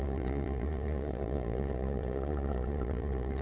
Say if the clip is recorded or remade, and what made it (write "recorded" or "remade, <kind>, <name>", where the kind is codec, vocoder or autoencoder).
remade, vocoder, Vocos